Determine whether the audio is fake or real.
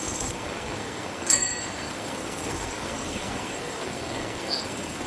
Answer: fake